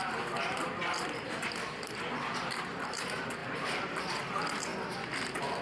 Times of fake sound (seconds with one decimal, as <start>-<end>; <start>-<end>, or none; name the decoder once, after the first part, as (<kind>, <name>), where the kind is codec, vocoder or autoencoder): 0.0-4.7 (vocoder, BigVGAN v2)